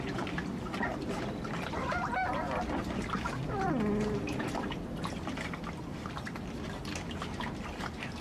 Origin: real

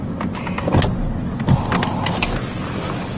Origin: real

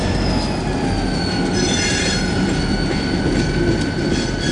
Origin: real